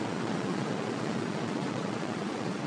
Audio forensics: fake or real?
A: fake